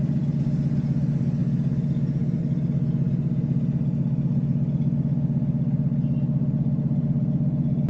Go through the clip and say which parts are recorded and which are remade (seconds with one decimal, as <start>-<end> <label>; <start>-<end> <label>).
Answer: 0.0-7.9 recorded